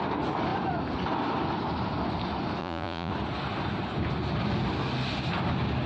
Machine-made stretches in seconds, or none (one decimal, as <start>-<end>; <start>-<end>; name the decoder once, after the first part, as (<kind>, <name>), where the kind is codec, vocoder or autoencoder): 2.6-3.1 (vocoder, Vocos)

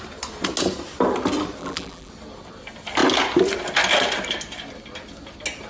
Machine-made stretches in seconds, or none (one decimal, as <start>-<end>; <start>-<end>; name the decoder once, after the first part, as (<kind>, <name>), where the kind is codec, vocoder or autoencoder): 1.6-2.1 (vocoder, BigVGAN v2)

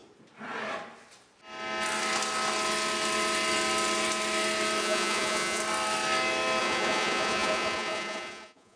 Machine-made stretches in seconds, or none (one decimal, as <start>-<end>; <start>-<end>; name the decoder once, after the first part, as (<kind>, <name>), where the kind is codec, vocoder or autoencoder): 4.8-5.6 (vocoder, Vocos); 6.6-8.8

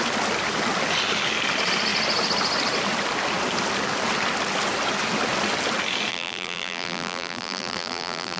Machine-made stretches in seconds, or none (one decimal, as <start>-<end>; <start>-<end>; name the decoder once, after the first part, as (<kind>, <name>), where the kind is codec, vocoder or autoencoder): 6.1-8.4 (vocoder, BigVGAN v2)